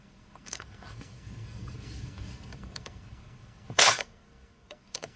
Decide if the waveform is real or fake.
fake